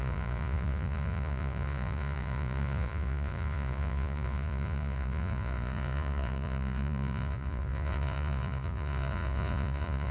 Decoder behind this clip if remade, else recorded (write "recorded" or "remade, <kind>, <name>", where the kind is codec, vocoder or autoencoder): remade, vocoder, Vocos